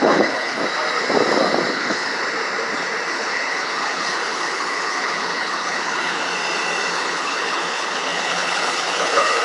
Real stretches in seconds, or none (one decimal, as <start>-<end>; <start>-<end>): 0.6-1.7; 2.2-3.1; 6.3-6.9

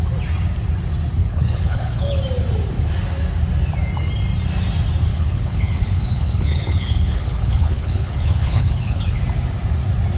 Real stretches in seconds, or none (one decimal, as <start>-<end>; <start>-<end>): 0.0-1.2; 2.2-5.1; 9.2-10.2